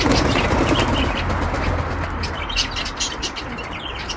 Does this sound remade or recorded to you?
recorded